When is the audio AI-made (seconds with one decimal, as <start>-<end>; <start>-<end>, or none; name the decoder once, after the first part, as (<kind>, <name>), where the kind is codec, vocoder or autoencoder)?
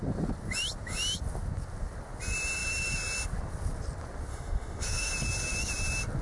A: 4.3-5.1 (autoencoder, DAC-VAE)